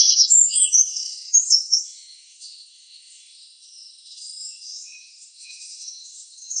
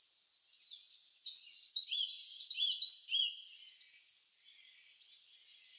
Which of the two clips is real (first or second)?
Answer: second